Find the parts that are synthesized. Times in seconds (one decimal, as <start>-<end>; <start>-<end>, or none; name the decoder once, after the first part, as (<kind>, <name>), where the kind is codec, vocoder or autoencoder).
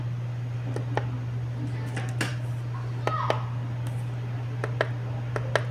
none